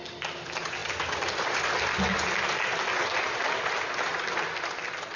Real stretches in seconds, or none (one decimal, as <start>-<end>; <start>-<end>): 0.0-5.2